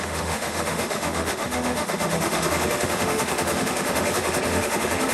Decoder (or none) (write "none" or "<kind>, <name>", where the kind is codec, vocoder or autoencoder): autoencoder, DAC-VAE